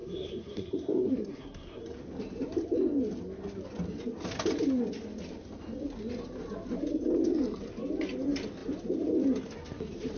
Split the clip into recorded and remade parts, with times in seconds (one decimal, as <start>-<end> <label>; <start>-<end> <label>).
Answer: 0.0-1.8 remade; 1.8-10.2 recorded